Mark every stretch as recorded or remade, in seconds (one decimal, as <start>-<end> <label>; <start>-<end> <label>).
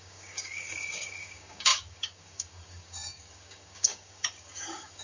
0.0-5.0 remade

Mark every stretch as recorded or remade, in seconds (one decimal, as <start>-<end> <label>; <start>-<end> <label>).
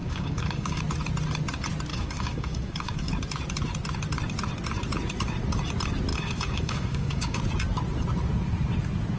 0.0-0.8 remade; 0.8-1.9 recorded; 1.9-3.1 remade; 3.1-6.1 recorded; 6.1-7.4 remade; 7.4-9.2 recorded